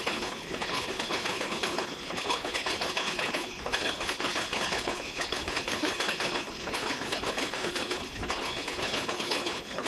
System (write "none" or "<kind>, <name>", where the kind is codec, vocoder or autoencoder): codec, HILCodec